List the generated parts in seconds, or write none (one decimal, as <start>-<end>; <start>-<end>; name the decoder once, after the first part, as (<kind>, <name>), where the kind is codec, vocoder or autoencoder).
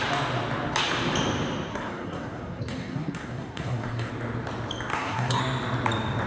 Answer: 1.7-4.1 (codec, SNAC); 4.9-5.4